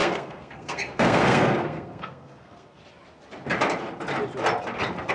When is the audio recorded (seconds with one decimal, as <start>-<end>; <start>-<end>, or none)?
2.8-5.1